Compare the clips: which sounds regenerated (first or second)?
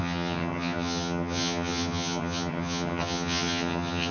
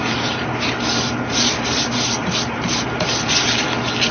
first